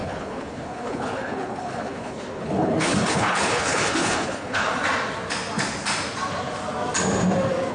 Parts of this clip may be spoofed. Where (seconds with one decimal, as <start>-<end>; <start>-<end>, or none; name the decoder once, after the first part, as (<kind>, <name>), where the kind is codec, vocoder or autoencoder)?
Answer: 0.0-4.7 (codec, HILCodec)